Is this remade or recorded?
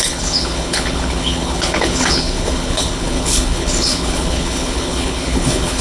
remade